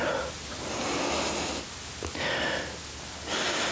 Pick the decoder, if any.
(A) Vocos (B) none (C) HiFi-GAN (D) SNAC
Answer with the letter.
B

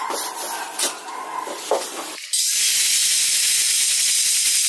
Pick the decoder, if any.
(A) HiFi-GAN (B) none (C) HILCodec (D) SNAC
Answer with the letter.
B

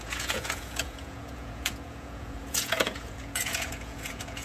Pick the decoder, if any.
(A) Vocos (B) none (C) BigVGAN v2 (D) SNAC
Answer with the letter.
A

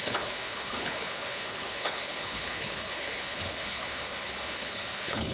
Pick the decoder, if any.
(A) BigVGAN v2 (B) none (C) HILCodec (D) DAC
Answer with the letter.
C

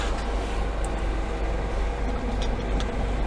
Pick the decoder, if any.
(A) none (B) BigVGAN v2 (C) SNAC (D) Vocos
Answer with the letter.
A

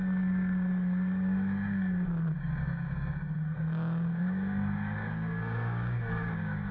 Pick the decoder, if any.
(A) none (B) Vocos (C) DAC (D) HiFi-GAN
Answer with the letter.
C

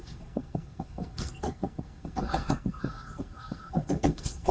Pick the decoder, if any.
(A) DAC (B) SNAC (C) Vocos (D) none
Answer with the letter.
B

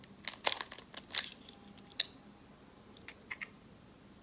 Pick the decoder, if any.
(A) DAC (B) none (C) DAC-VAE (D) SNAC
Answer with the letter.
B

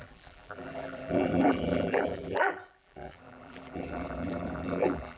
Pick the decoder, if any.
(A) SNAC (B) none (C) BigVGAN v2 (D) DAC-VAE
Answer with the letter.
C